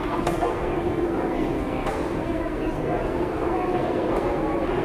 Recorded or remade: remade